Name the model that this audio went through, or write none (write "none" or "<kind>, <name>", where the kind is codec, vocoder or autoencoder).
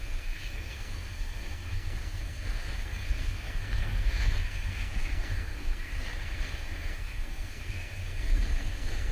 codec, SNAC